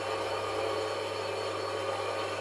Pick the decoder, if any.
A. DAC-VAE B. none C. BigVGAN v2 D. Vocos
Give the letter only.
B